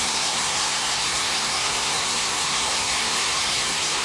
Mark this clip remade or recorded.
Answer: remade